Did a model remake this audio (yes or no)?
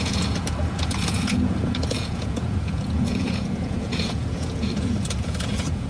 yes